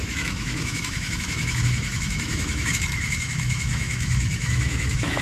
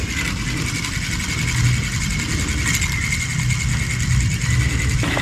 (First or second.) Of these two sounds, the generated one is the first